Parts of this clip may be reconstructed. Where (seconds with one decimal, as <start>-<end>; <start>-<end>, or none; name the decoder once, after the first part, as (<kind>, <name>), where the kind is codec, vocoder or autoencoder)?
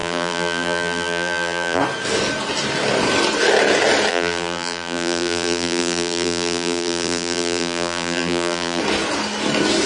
0.0-1.8 (vocoder, BigVGAN v2); 4.1-8.8